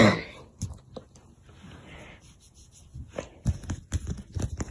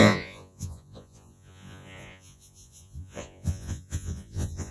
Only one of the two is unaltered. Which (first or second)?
first